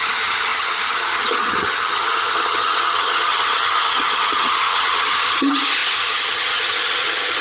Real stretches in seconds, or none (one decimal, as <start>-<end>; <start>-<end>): none